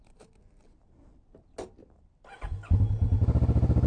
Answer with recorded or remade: recorded